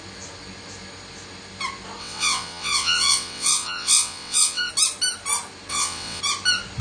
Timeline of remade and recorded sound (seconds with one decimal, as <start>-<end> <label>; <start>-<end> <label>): 0.0-2.0 recorded; 2.0-4.7 remade; 4.7-5.7 recorded; 5.7-6.2 remade; 6.2-6.8 recorded